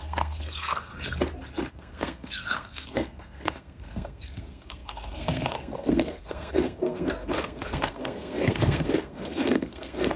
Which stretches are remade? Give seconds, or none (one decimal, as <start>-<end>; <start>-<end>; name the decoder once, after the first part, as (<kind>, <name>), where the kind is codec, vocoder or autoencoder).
0.0-0.9 (codec, SNAC); 1.7-10.2